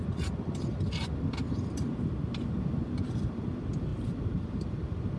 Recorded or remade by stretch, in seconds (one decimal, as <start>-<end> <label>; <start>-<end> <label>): 0.0-5.2 recorded